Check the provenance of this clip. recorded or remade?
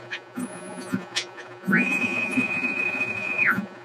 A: remade